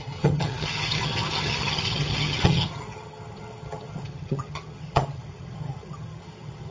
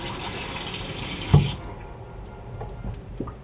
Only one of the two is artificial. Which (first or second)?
first